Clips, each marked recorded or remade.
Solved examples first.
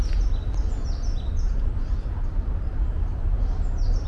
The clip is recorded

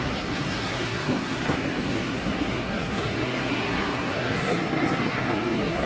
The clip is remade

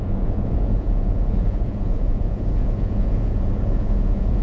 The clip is remade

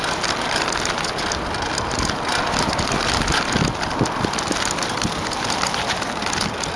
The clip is recorded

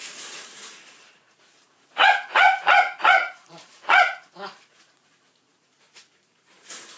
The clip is remade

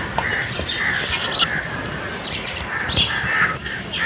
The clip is remade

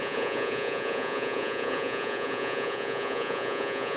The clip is remade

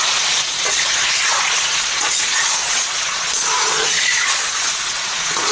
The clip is remade